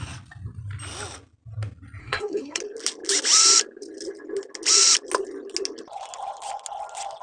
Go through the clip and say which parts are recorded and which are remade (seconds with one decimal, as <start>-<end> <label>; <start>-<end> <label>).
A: 0.0-2.0 recorded; 2.0-2.6 remade; 2.6-7.2 recorded